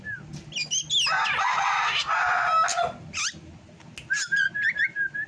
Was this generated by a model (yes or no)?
no